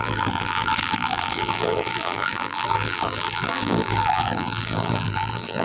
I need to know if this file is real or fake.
fake